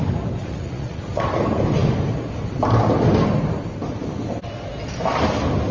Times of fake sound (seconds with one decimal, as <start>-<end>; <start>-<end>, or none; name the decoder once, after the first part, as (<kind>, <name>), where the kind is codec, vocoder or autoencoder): 0.4-1.0 (vocoder, Vocos)